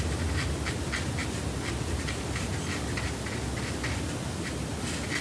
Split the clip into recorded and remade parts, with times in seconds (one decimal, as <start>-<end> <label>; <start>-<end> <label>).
0.0-5.2 recorded